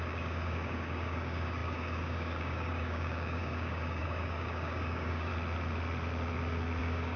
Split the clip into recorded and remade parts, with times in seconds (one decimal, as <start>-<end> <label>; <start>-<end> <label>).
0.0-5.3 remade; 5.3-6.8 recorded; 6.8-7.2 remade